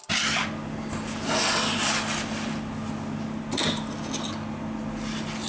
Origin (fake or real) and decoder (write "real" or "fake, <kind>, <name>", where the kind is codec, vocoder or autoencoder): real